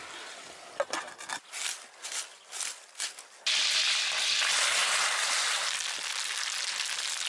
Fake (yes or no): no